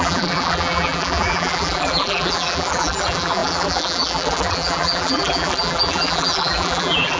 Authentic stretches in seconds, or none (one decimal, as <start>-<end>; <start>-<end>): none